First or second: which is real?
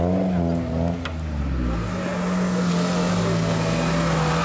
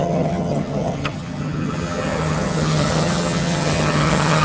first